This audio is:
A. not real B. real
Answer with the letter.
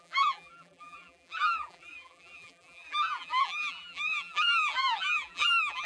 A